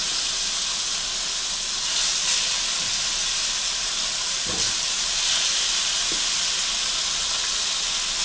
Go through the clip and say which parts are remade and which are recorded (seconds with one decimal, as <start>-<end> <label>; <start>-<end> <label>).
0.0-2.2 recorded; 2.2-5.9 remade; 5.9-8.2 recorded